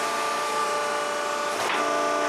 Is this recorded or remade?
recorded